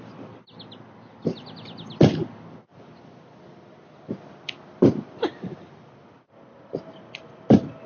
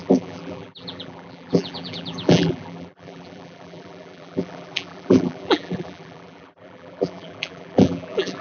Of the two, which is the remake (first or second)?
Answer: second